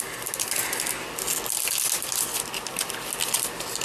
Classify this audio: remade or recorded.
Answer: recorded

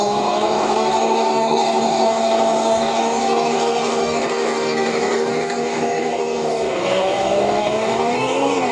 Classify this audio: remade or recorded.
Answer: remade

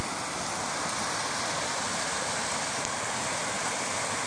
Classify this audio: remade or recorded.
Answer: recorded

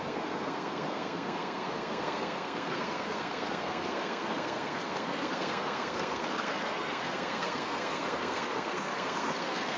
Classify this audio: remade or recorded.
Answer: remade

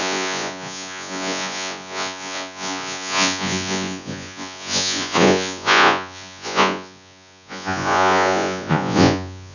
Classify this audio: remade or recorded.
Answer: remade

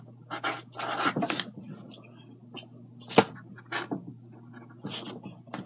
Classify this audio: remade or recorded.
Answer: recorded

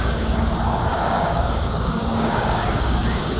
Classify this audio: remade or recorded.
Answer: remade